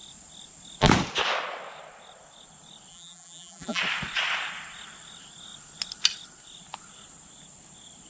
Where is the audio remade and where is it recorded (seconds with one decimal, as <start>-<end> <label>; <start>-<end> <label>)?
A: 0.0-2.9 recorded; 2.9-3.8 remade; 3.8-8.1 recorded